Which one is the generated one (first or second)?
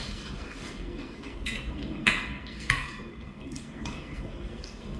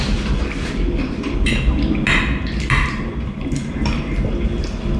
first